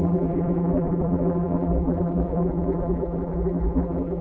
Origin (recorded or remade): remade